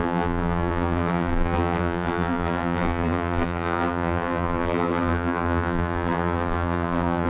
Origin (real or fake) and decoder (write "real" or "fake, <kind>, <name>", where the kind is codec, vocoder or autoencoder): fake, vocoder, BigVGAN v2